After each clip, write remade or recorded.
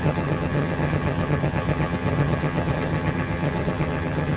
remade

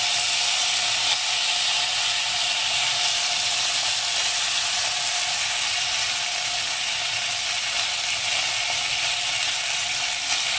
recorded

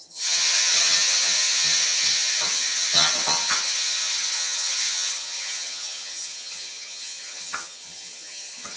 remade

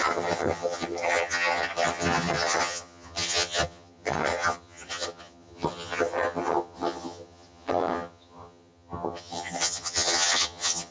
remade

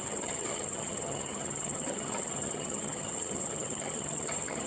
remade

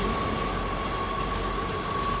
recorded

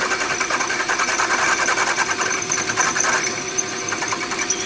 recorded